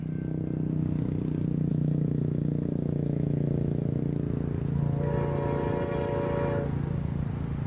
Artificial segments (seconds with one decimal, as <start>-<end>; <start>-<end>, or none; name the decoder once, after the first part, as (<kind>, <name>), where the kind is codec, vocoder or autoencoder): 1.7-4.0 (autoencoder, DAC-VAE)